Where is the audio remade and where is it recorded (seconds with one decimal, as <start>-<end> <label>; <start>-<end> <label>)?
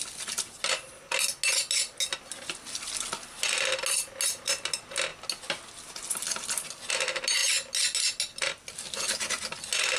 0.0-10.0 recorded